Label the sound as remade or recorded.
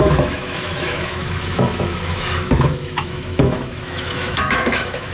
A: remade